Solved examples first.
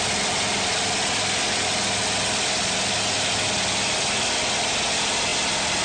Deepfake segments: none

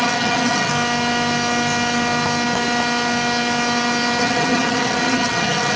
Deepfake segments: 0.0-0.7 (vocoder, HiFi-GAN); 4.2-5.8

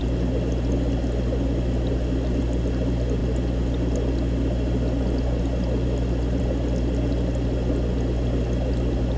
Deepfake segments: none

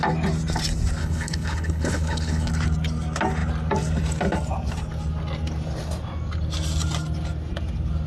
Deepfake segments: 1.0-2.5 (codec, HILCodec)

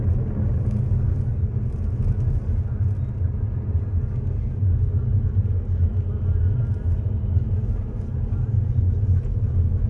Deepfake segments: none